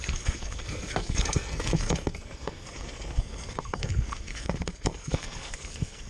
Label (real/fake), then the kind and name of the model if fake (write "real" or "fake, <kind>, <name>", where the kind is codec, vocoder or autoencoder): fake, codec, SNAC